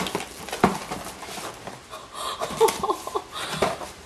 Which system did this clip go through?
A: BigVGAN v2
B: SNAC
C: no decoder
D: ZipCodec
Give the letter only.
C